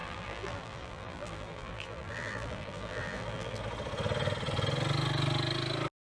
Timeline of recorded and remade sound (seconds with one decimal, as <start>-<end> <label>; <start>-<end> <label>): 0.0-3.6 remade; 3.6-6.0 recorded